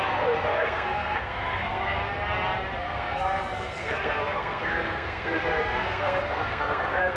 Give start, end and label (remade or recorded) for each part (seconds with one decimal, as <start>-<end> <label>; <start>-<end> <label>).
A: 0.0-2.0 remade; 2.0-2.8 recorded; 2.8-7.2 remade